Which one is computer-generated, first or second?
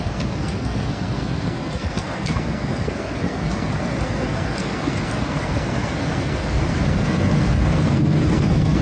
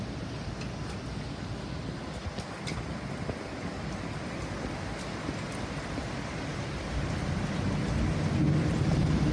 first